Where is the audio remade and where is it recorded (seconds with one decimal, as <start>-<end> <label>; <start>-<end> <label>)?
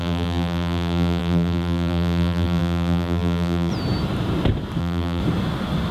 0.0-3.7 remade; 3.7-4.8 recorded; 4.8-5.2 remade; 5.2-5.9 recorded